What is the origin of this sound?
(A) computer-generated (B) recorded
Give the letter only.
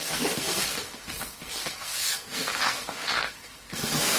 A